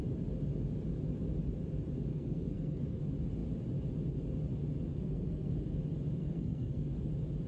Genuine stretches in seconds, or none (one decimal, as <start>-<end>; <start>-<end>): 0.0-2.1; 3.0-4.9; 5.5-6.2; 7.1-7.5